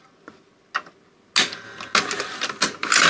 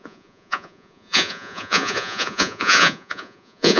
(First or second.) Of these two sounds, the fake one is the second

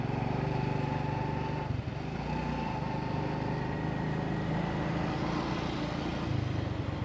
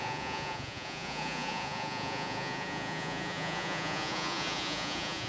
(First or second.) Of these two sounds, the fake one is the second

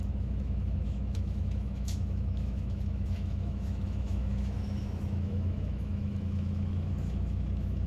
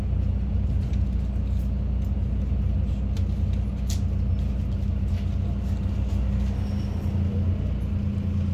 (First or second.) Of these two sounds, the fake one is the first